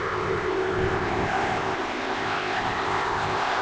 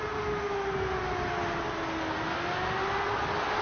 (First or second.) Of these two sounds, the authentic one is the second